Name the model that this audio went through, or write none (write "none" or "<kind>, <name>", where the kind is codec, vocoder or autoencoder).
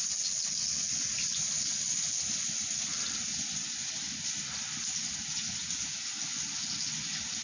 none